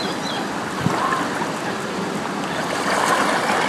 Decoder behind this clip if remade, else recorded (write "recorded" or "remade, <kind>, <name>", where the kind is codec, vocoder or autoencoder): recorded